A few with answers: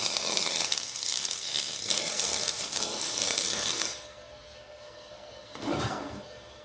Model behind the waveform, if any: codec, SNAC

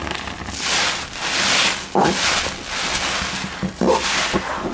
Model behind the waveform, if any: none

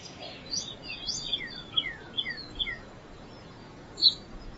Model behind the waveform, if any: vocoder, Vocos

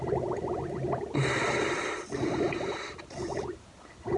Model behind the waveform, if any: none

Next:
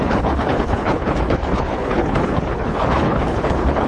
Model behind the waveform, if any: codec, HILCodec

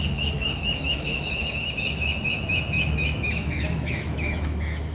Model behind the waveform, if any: autoencoder, DAC-VAE